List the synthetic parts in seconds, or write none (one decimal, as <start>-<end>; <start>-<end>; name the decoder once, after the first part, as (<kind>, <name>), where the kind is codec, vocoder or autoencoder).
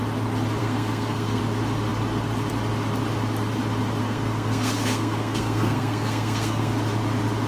0.6-1.4 (codec, SNAC); 4.0-6.7